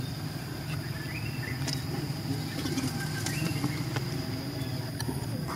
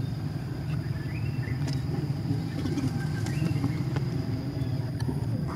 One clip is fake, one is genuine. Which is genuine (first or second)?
first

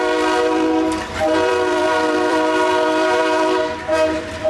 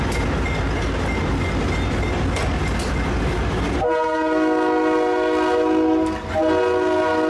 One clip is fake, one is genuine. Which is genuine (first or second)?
second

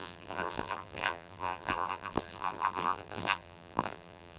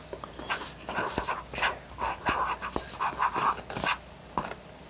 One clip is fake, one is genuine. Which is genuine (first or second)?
second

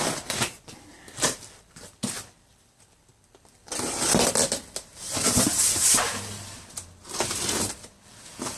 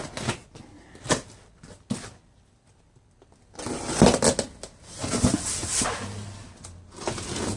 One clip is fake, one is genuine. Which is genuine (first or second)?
second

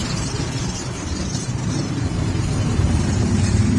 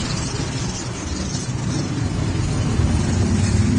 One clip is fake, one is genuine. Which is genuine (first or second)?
second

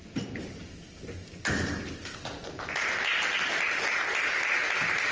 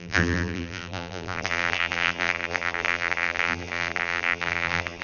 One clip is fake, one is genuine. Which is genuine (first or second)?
first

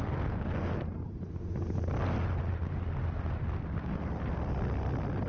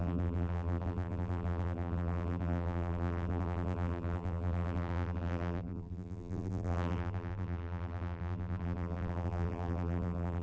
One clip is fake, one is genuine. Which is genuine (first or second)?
first